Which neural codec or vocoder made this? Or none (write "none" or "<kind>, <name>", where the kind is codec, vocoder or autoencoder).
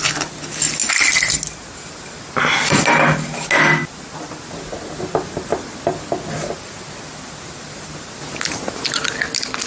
none